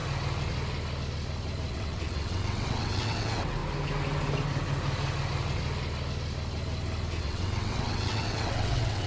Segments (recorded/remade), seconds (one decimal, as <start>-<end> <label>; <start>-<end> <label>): 0.0-1.7 recorded; 1.7-3.6 remade; 3.6-7.2 recorded; 7.2-9.1 remade